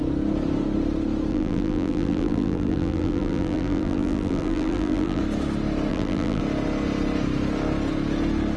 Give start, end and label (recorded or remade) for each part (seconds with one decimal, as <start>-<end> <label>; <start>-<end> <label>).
0.0-1.3 recorded; 1.3-5.2 remade; 5.2-5.9 recorded; 5.9-6.4 remade; 6.4-8.6 recorded